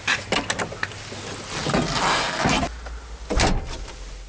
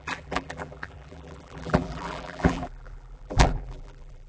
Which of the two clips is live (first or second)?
first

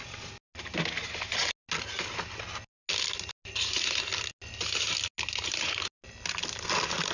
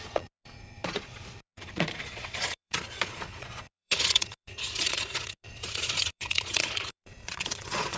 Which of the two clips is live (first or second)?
first